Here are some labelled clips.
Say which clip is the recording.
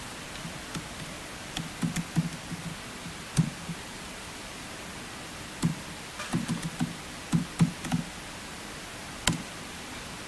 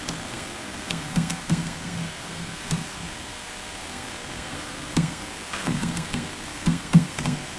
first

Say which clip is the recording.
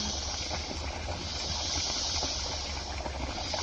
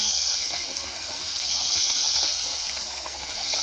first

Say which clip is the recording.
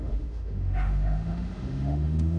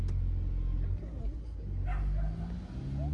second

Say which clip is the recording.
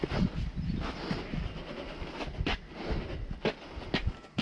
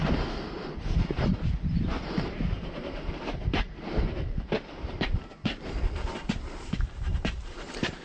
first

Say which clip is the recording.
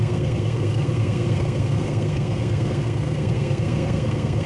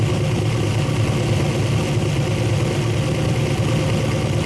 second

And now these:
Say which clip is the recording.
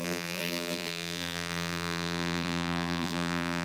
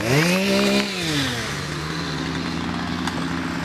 second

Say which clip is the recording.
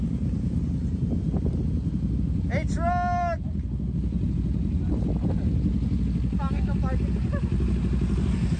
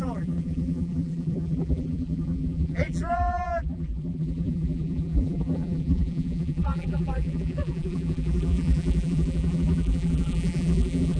first